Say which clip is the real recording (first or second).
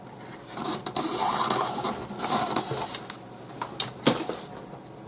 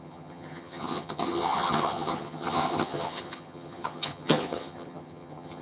first